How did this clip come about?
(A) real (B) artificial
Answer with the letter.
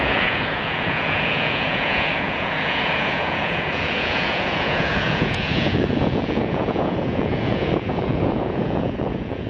B